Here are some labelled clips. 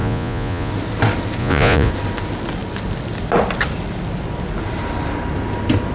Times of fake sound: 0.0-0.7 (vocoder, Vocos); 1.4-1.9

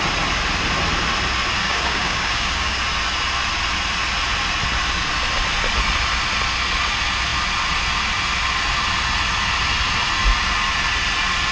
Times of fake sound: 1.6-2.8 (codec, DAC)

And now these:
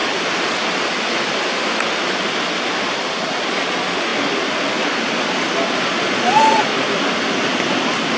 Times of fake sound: 3.5-4.1 (vocoder, Vocos); 5.8-6.7

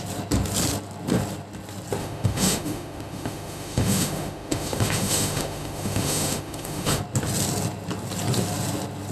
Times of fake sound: 2.0-7.0 (autoencoder, DAC-VAE)